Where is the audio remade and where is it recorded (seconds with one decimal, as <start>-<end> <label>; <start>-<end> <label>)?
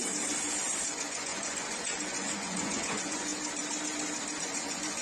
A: 0.0-0.9 recorded; 0.9-3.3 remade; 3.3-4.4 recorded; 4.4-5.0 remade